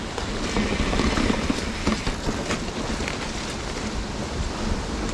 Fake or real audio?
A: real